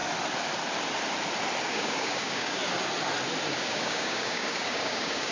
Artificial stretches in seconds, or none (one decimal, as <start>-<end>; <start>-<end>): 1.7-2.6; 3.6-5.3